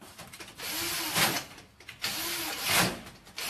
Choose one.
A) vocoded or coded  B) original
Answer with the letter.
B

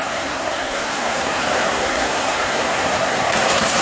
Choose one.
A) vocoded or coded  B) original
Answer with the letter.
A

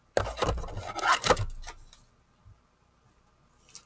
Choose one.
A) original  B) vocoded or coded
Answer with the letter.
A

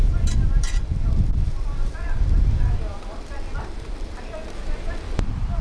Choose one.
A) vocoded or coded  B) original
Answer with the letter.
A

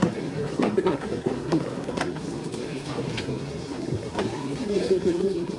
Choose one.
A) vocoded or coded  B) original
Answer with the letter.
A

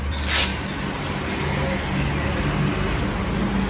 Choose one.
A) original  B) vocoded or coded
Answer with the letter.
A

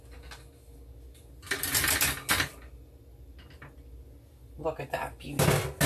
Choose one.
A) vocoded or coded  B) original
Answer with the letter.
B